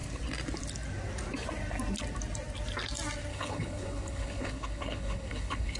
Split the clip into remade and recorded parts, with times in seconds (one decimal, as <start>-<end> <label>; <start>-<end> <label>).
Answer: 0.0-3.3 recorded; 3.3-5.8 remade